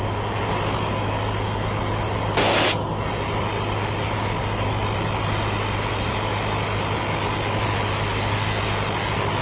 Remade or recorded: recorded